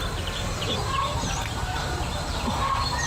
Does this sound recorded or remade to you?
remade